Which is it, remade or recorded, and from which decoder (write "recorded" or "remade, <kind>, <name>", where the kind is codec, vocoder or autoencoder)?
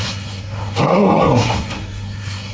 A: remade, codec, SNAC